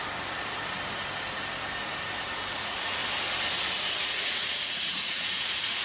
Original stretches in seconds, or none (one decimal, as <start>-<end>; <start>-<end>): 0.0-2.5; 3.0-4.0